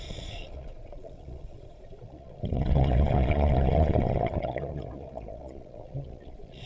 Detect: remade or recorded remade